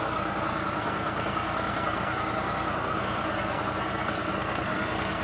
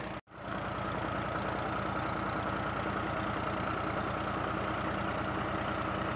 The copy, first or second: first